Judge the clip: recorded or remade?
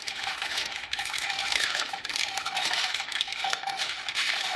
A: remade